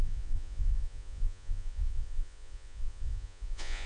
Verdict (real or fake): fake